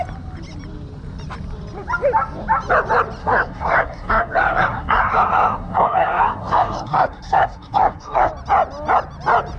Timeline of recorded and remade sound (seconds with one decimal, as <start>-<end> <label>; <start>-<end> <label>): 0.0-3.2 recorded; 3.2-8.3 remade; 8.3-9.6 recorded